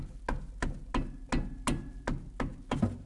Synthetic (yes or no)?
no